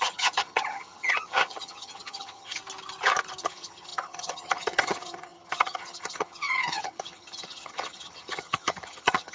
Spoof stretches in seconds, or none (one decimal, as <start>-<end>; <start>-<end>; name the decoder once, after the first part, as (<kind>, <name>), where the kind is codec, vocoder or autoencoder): 0.0-2.6 (vocoder, HiFi-GAN); 3.4-9.3